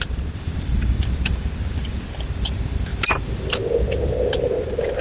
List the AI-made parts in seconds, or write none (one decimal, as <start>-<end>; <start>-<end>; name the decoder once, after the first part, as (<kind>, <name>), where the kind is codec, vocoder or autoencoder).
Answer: 0.0-5.0 (vocoder, BigVGAN v2)